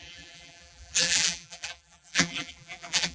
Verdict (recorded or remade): remade